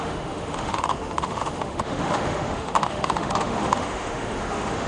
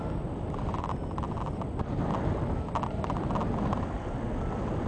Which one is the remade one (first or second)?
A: first